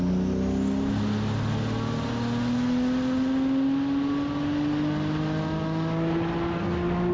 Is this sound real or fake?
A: real